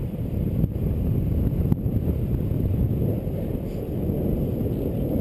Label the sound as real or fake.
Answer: real